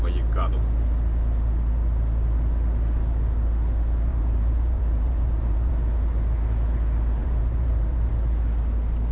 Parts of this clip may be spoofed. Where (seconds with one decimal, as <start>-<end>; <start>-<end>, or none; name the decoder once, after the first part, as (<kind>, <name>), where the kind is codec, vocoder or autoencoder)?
4.1-5.7 (vocoder, BigVGAN v2); 7.2-8.1